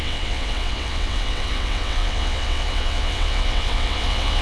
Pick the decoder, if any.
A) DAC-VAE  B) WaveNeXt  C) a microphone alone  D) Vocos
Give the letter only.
B